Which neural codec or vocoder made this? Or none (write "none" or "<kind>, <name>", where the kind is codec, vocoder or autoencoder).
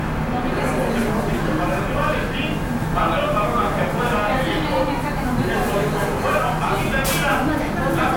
none